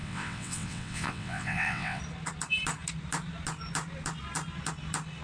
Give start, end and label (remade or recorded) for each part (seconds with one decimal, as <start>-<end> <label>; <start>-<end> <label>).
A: 0.0-2.0 remade; 2.0-5.2 recorded